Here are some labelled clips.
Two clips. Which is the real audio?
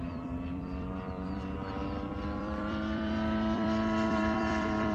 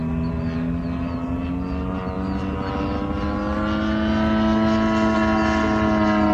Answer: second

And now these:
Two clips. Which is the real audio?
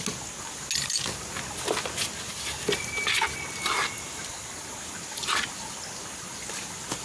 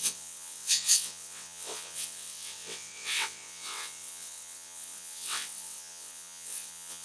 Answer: first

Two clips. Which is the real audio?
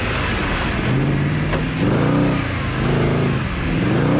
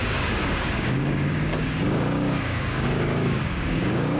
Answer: first